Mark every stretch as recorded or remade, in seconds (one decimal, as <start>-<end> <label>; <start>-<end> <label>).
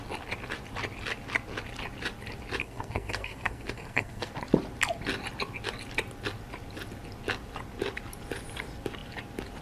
0.0-2.6 recorded; 2.6-4.3 remade; 4.3-9.6 recorded